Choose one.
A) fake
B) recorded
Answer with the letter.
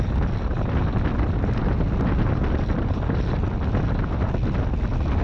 B